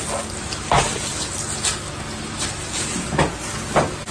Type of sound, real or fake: real